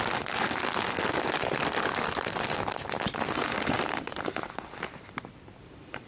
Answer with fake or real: real